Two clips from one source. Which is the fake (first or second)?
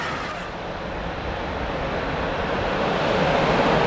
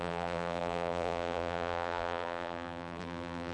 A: second